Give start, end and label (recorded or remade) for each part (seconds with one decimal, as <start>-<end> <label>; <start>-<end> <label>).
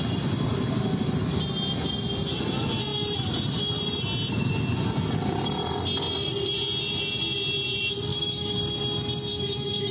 0.0-8.1 recorded; 8.1-8.6 remade; 8.6-9.3 recorded; 9.3-9.9 remade